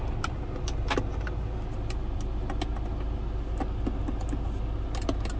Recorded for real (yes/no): yes